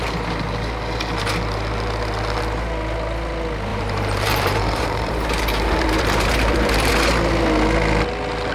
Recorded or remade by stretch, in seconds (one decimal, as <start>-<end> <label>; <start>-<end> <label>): 0.0-3.7 recorded; 3.7-6.9 remade; 6.9-8.5 recorded